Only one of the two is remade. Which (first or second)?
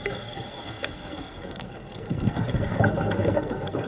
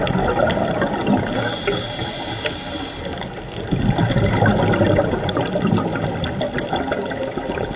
first